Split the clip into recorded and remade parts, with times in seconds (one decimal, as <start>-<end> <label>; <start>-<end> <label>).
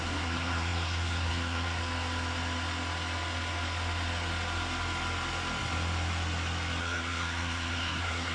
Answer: 0.0-1.8 remade; 1.8-6.8 recorded; 6.8-8.3 remade